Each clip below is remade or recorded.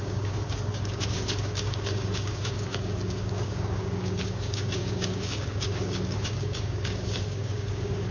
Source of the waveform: remade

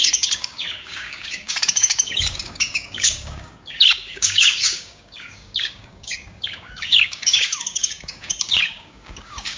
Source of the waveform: remade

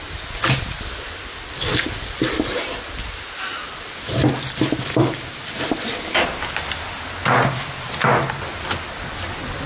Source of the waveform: recorded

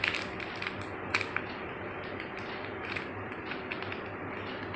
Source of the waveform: recorded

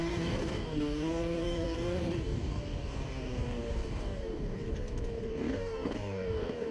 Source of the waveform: remade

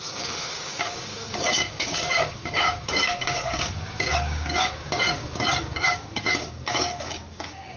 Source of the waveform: remade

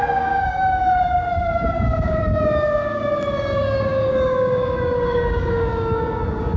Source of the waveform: remade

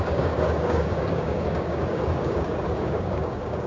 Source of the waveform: remade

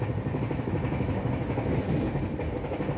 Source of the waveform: recorded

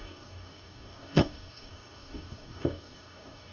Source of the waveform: remade